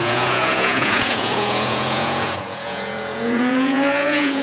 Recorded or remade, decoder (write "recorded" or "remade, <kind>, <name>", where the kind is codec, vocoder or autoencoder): remade, vocoder, Vocos